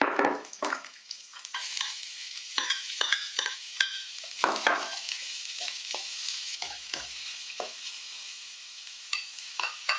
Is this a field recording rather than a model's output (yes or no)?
no